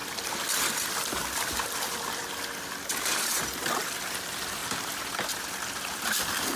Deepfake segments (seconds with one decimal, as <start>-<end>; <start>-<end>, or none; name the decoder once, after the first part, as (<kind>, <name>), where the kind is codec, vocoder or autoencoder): 0.7-2.2 (vocoder, BigVGAN v2); 3.8-6.6